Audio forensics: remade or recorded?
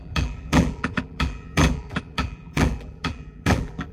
remade